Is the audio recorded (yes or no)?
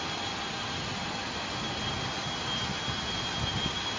yes